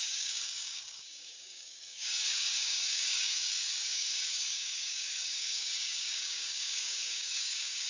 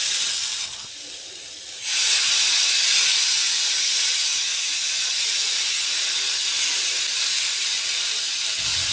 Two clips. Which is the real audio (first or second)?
second